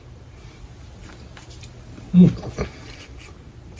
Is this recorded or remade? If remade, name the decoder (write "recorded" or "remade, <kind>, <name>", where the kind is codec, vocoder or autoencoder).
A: recorded